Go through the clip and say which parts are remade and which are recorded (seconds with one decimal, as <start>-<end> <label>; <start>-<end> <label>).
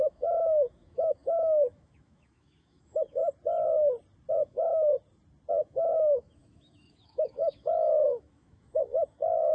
0.0-3.2 remade; 3.2-4.3 recorded; 4.3-4.9 remade; 4.9-5.5 recorded; 5.5-9.5 remade